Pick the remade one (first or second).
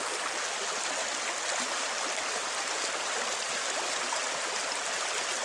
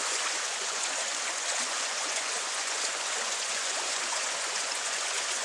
second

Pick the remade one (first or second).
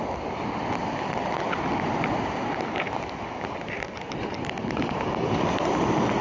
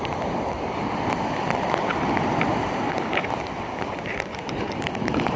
second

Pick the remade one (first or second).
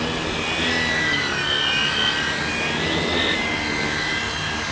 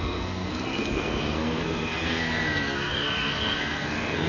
second